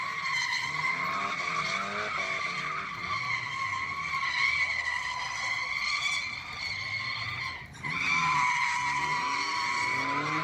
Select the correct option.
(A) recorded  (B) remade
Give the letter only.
A